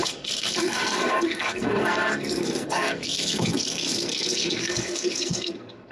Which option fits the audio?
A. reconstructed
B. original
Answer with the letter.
A